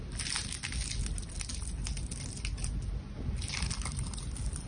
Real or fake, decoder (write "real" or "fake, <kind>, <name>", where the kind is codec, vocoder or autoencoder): real